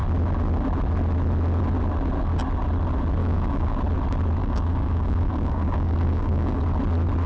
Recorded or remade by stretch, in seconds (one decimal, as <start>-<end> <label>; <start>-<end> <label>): 0.0-3.2 recorded; 3.2-3.8 remade; 3.8-4.4 recorded; 4.4-6.6 remade; 6.6-7.3 recorded